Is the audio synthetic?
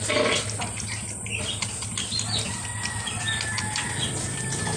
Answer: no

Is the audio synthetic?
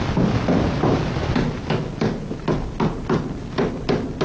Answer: no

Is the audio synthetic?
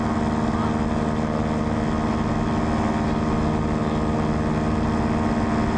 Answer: no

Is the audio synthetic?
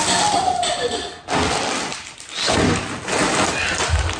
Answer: no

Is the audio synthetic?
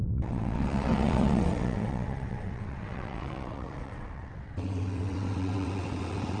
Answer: yes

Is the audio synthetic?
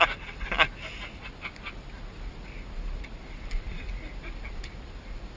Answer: no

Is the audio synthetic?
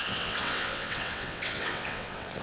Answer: yes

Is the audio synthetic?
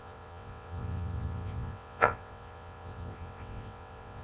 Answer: yes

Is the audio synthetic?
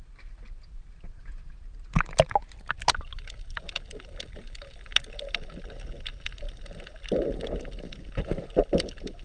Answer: no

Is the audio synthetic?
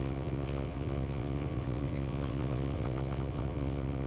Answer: yes